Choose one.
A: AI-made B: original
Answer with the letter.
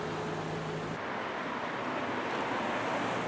B